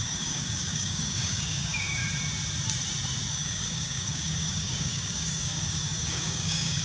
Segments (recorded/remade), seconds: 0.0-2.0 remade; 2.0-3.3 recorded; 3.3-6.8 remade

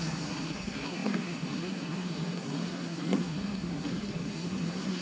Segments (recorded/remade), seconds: 0.0-5.0 remade

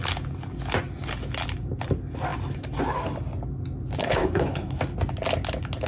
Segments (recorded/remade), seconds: 0.0-4.0 recorded; 4.0-4.8 remade; 4.8-5.9 recorded

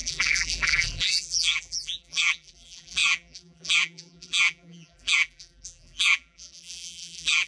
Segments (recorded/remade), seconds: 0.0-7.5 remade

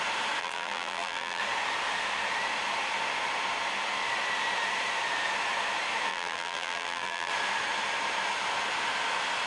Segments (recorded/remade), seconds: 0.0-0.4 recorded; 0.4-1.4 remade; 1.4-6.1 recorded; 6.1-7.3 remade; 7.3-9.5 recorded